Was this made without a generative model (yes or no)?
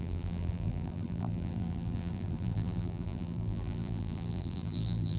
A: no